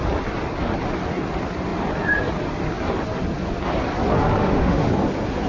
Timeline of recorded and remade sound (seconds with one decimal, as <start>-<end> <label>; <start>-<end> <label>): 0.0-4.4 recorded; 4.4-4.9 remade; 4.9-5.5 recorded